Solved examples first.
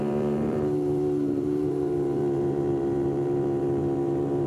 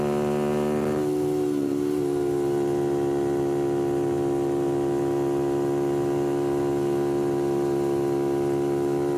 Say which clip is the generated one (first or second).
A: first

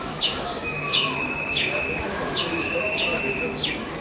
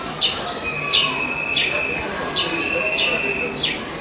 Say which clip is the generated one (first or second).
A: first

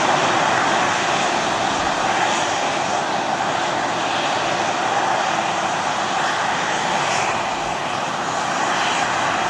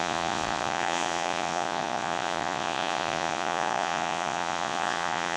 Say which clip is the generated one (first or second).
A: second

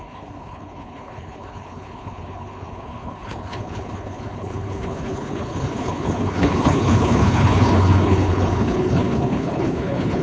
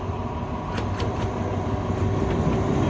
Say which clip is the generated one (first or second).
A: first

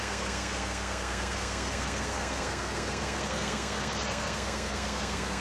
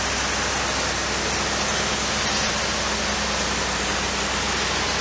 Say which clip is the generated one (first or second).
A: first